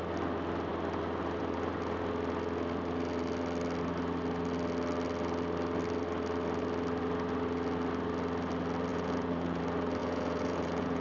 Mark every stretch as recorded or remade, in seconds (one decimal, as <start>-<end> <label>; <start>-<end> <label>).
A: 0.0-8.9 recorded; 8.9-9.6 remade; 9.6-10.0 recorded; 10.0-11.0 remade